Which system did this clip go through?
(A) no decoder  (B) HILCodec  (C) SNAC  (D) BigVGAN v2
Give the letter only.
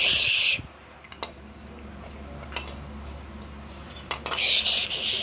A